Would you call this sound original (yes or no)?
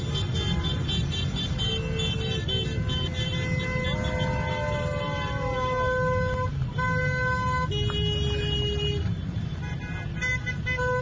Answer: yes